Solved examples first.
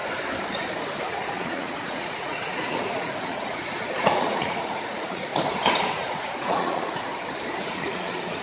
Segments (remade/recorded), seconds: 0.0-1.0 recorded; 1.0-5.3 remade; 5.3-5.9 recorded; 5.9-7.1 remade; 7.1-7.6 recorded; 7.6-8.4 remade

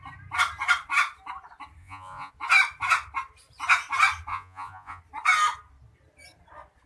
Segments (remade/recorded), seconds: 0.0-1.8 recorded; 1.8-2.3 remade; 2.3-4.3 recorded; 4.3-5.0 remade; 5.0-6.9 recorded

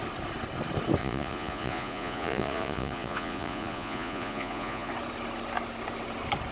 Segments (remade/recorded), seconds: 0.0-1.0 recorded; 1.0-4.9 remade; 4.9-6.5 recorded

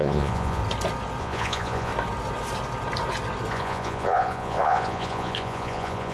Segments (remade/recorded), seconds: 0.0-0.6 remade; 0.6-1.2 recorded; 1.2-1.9 remade; 1.9-3.5 recorded; 3.5-6.1 remade

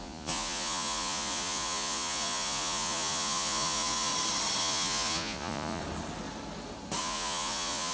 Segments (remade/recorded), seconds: 0.0-4.1 remade; 4.1-4.6 recorded; 4.6-5.8 remade; 5.8-7.0 recorded; 7.0-7.9 remade

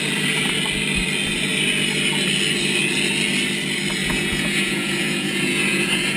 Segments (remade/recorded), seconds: 0.0-4.0 recorded; 4.0-6.2 remade

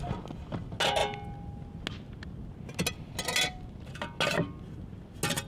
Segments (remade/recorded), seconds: 0.0-5.5 recorded

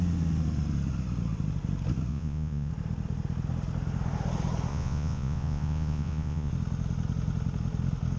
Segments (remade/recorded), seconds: 0.0-2.1 recorded; 2.1-2.7 remade; 2.7-4.7 recorded; 4.7-6.5 remade; 6.5-8.2 recorded